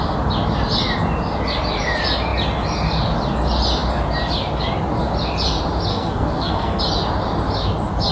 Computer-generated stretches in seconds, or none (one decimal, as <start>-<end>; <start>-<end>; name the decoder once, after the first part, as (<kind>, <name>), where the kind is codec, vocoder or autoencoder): 5.9-6.8 (codec, SNAC)